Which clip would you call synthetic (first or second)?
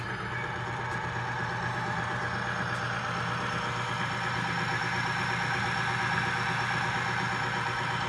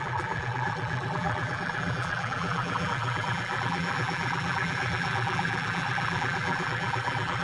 second